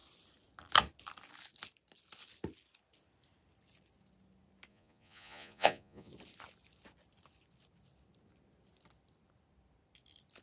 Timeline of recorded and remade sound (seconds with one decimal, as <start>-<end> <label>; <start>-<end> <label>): 0.0-4.7 recorded; 4.7-6.1 remade; 6.1-10.4 recorded